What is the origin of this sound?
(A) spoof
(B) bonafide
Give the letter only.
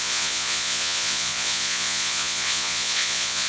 A